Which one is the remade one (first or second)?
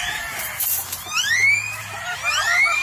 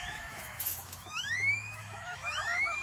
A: second